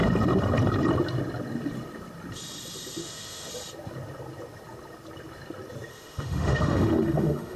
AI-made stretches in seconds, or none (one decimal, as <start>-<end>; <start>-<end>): 3.0-3.5; 5.9-7.6